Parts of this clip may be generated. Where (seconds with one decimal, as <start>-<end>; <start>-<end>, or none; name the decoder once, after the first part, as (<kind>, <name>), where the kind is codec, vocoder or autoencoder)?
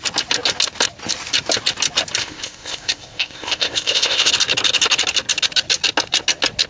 2.2-4.3 (codec, ZipCodec)